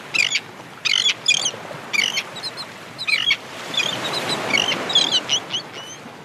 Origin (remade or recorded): recorded